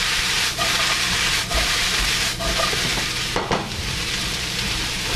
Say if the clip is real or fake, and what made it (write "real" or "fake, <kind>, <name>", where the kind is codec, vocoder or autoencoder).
fake, vocoder, BigVGAN v2